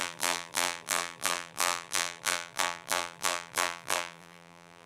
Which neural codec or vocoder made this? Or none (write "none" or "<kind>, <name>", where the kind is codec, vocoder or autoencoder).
vocoder, BigVGAN v2